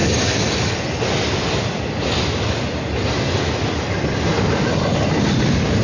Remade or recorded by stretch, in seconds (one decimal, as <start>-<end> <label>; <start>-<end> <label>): 0.0-5.8 recorded